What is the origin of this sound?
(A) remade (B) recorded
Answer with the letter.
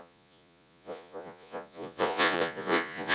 A